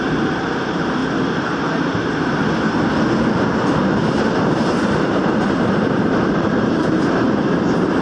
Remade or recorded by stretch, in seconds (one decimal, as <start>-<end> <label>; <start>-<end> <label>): 0.0-1.0 remade; 1.0-1.6 recorded; 1.6-2.4 remade; 2.4-4.4 recorded; 4.4-8.0 remade